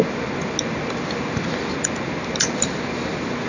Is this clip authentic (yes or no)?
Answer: yes